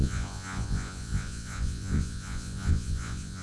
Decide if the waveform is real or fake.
fake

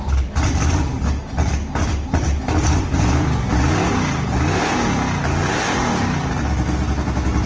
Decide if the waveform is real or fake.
real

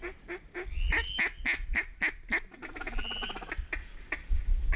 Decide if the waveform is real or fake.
real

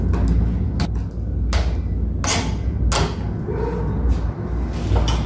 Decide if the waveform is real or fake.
real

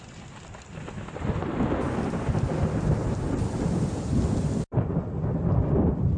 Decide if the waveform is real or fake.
real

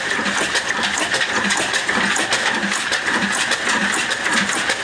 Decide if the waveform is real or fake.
real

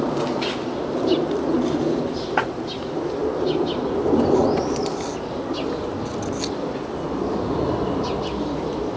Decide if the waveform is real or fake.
real